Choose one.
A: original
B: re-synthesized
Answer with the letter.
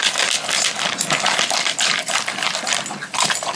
A